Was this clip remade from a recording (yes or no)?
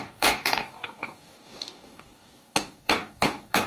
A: yes